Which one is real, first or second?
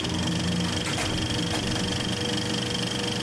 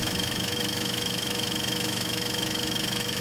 first